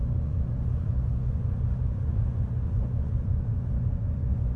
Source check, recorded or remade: remade